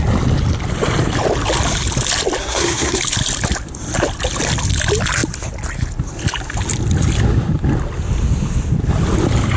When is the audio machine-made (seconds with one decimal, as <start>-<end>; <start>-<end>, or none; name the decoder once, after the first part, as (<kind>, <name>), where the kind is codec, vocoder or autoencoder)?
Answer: 2.4-3.0 (codec, SNAC)

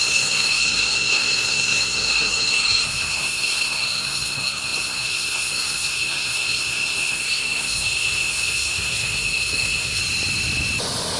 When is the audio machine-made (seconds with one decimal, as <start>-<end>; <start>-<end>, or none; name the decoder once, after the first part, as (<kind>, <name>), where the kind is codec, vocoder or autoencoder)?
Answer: 0.0-10.0 (codec, SNAC)

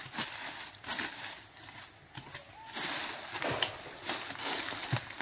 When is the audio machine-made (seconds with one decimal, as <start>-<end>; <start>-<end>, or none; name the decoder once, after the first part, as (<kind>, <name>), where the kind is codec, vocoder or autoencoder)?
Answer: none

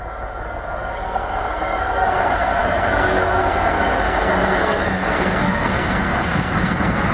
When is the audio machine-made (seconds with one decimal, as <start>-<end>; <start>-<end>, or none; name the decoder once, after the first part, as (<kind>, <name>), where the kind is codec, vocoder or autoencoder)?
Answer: 0.0-7.1 (codec, SNAC)

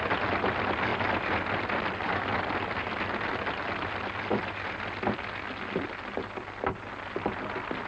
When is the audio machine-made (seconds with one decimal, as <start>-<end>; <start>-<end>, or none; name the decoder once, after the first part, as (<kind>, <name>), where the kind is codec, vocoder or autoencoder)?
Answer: none

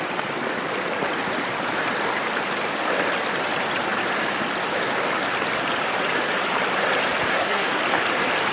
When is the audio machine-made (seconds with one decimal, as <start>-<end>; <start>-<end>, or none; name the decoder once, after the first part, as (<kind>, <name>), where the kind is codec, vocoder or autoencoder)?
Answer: 7.3-7.8 (codec, SNAC)